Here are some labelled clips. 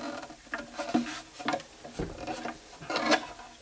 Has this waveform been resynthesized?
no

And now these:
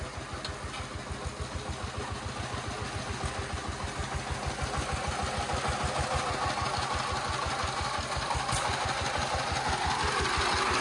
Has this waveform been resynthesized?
no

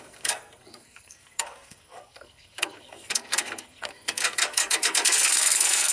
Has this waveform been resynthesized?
yes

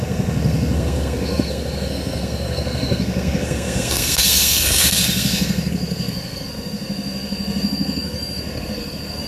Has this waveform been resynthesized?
yes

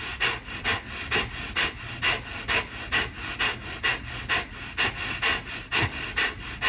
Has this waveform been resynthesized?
no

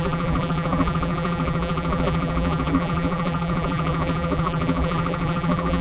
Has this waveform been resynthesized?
yes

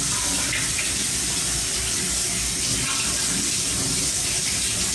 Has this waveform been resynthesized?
no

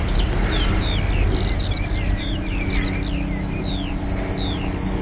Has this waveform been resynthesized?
no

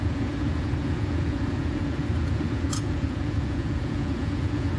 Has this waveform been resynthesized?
yes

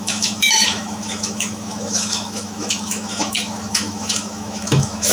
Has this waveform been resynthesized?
yes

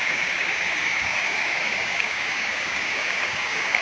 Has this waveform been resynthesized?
yes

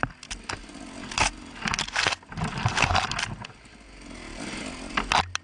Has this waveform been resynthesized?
no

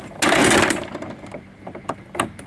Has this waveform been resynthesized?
no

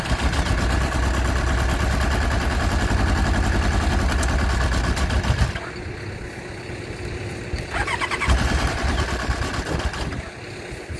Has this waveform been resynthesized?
no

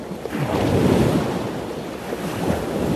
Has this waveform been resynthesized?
no